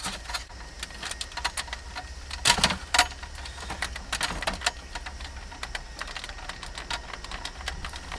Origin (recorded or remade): recorded